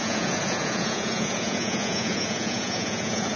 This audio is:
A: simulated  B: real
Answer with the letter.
A